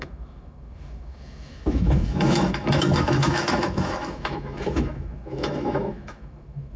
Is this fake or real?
fake